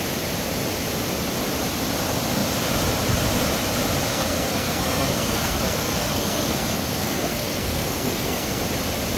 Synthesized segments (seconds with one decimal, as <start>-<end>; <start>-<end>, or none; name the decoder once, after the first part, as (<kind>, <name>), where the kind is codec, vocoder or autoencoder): 4.1-8.6 (codec, SNAC)